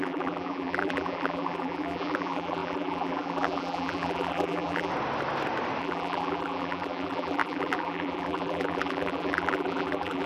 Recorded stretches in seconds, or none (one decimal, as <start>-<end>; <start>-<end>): 4.9-5.8